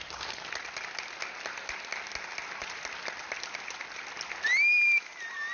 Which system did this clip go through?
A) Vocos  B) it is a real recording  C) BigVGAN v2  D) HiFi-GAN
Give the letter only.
B